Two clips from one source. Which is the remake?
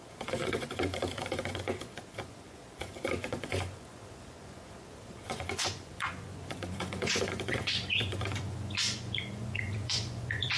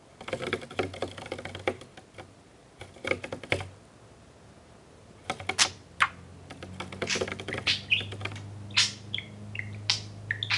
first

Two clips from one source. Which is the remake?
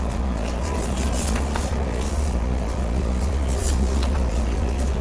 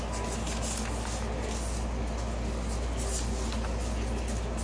first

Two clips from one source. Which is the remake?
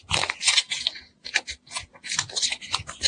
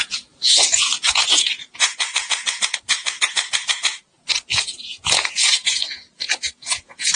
second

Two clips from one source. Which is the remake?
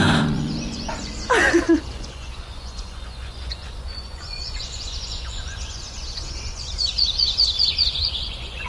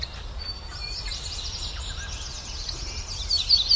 first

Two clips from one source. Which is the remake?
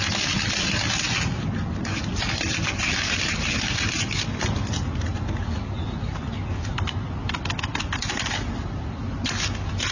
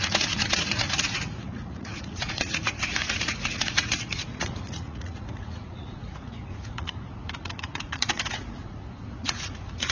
second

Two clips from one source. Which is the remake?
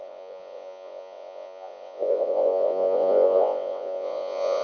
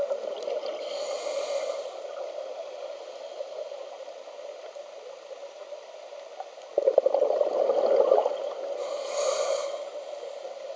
first